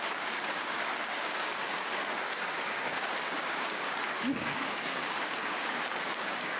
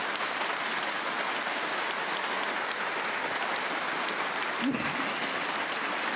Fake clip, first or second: first